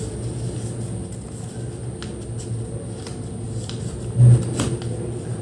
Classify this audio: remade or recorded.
recorded